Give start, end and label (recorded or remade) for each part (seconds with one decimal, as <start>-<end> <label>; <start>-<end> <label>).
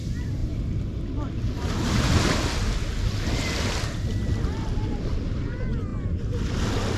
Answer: 0.0-7.0 recorded